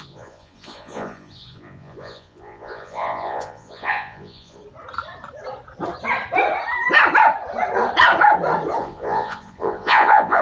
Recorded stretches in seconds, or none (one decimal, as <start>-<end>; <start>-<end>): 4.6-8.8